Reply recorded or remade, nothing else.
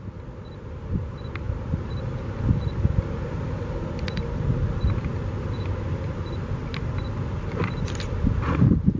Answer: recorded